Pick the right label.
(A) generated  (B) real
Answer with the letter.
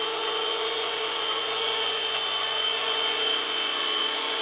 A